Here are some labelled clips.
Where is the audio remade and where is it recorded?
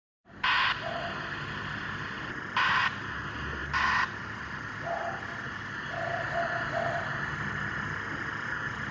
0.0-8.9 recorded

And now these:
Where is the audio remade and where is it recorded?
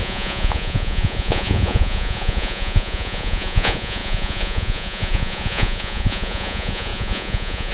0.0-7.7 remade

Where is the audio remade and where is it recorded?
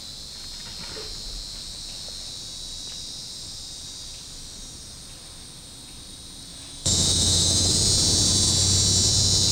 0.0-6.5 recorded; 6.5-7.7 remade; 7.7-9.5 recorded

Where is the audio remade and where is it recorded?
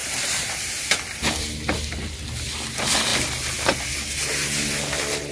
0.0-1.4 remade; 1.4-5.3 recorded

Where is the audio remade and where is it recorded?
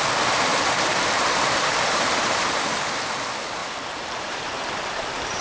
0.0-0.5 recorded; 0.5-3.1 remade; 3.1-3.6 recorded; 3.6-5.4 remade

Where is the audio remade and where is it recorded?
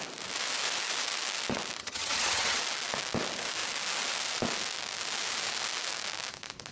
0.0-1.8 recorded; 1.8-2.6 remade; 2.6-6.7 recorded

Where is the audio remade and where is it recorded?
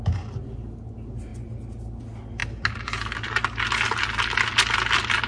0.0-5.3 recorded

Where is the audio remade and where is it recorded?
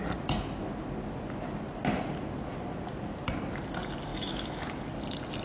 0.0-4.1 recorded; 4.1-4.8 remade; 4.8-5.4 recorded